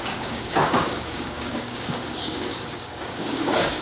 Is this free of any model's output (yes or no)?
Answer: no